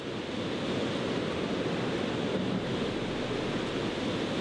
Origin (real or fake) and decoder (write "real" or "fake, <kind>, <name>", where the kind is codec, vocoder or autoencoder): real